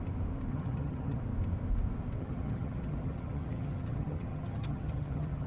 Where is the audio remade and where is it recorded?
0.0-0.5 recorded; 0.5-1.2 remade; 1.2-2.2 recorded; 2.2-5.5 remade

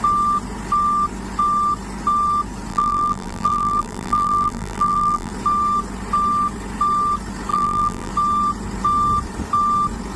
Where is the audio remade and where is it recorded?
0.0-2.7 recorded; 2.7-5.3 remade; 5.3-7.5 recorded; 7.5-8.1 remade; 8.1-10.2 recorded

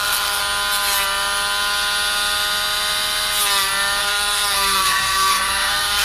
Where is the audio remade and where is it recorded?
0.0-0.4 remade; 0.4-4.0 recorded; 4.0-6.0 remade

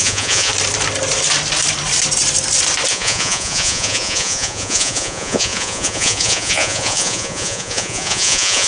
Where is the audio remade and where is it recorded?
0.0-0.5 remade; 0.5-2.9 recorded; 2.9-8.7 remade

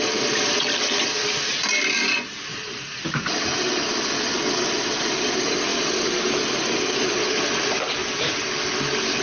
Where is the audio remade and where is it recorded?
0.0-2.5 recorded; 2.5-3.3 remade; 3.3-9.2 recorded

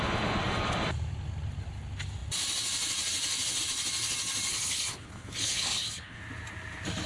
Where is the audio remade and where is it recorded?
0.0-4.5 recorded; 4.5-6.2 remade; 6.2-7.1 recorded

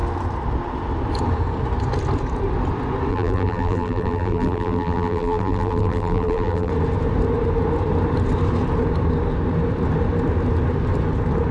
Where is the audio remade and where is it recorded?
0.0-3.1 recorded; 3.1-6.7 remade; 6.7-11.5 recorded